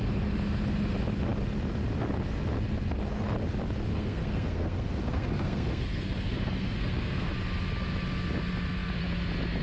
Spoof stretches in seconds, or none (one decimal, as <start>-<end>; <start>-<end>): 3.9-7.3

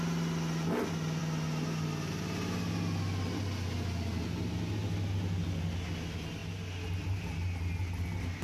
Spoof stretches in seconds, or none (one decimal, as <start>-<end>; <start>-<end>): none